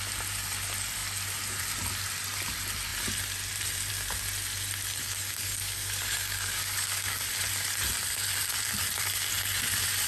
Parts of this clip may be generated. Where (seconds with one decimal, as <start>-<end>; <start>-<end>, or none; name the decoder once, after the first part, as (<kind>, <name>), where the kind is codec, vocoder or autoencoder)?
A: 5.0-7.3 (codec, DAC)